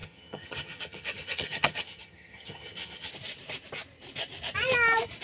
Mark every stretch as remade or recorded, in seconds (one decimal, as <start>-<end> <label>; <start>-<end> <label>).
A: 0.0-3.1 remade; 3.1-5.2 recorded

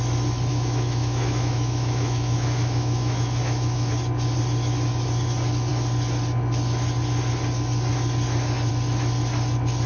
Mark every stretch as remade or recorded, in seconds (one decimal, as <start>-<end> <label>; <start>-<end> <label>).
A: 0.0-0.5 recorded; 0.5-3.9 remade; 3.9-9.9 recorded

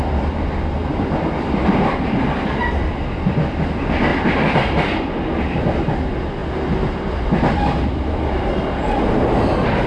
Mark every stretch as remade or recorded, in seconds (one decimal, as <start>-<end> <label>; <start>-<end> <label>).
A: 0.0-0.8 recorded; 0.8-2.6 remade; 2.6-4.1 recorded; 4.1-5.0 remade; 5.0-9.9 recorded

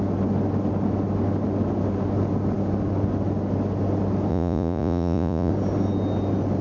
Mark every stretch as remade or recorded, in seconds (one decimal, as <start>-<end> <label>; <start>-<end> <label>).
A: 0.0-4.3 recorded; 4.3-5.5 remade; 5.5-6.6 recorded